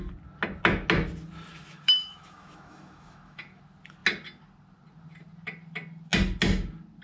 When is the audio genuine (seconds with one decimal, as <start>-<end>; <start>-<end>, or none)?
0.0-1.5; 3.6-7.0